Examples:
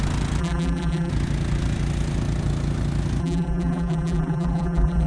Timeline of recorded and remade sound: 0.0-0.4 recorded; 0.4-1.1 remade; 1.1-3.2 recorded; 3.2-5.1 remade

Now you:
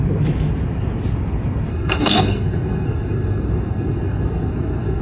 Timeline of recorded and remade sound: 0.0-1.7 recorded; 1.7-5.0 remade

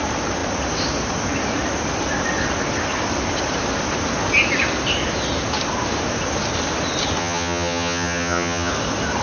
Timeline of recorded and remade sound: 0.0-7.2 recorded; 7.2-8.7 remade; 8.7-9.2 recorded